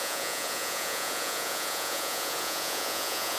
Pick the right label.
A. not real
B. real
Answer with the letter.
A